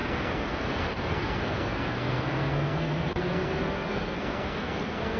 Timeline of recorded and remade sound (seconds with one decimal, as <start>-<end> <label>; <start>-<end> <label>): 0.0-5.2 remade